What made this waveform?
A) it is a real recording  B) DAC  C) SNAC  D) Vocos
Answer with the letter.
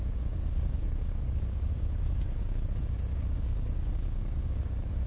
B